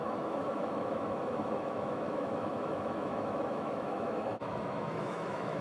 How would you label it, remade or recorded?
remade